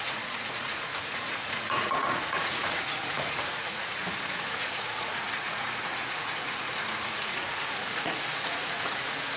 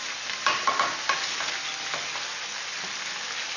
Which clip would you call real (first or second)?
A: second